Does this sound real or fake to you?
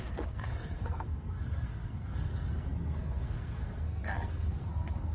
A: fake